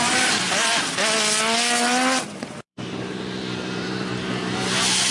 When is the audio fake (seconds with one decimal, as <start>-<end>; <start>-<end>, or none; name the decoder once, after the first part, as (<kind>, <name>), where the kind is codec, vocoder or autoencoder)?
0.0-0.7 (vocoder, BigVGAN v2); 2.2-5.1